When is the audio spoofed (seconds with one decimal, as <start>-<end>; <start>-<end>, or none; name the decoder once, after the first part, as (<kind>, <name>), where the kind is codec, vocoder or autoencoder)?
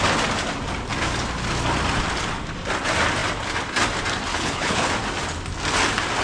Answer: 4.3-4.9 (codec, HILCodec)